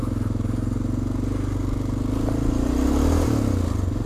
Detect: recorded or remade recorded